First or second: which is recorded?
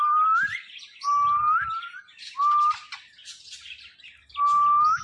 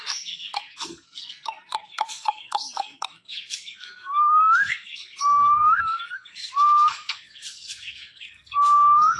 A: first